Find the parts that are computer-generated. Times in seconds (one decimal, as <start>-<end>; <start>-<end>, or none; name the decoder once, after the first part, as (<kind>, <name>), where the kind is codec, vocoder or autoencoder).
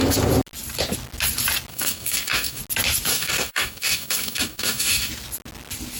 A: 1.7-2.6 (codec, DAC); 3.1-5.1